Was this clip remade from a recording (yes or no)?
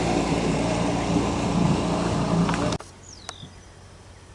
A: no